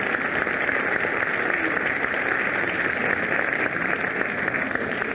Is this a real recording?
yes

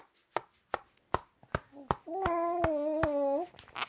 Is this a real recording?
yes